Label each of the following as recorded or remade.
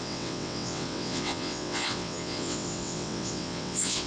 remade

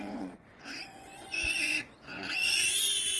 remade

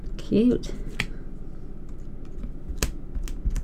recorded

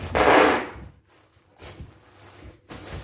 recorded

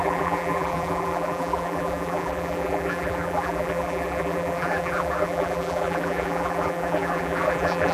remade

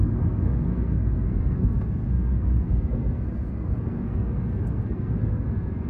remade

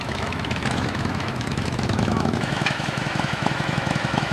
remade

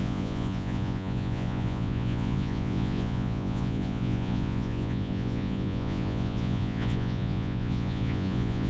remade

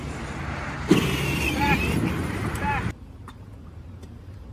remade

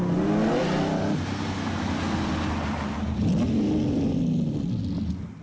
recorded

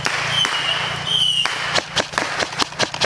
recorded